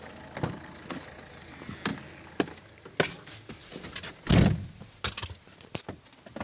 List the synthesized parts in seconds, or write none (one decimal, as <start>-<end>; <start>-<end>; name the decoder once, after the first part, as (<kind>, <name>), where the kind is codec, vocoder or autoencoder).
none